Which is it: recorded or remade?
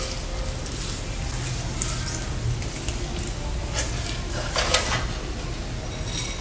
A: recorded